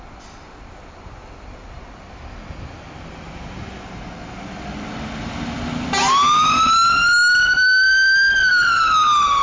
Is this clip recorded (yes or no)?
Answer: yes